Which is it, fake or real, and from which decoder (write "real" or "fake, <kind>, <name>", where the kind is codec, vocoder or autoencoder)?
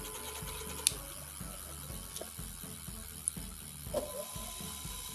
real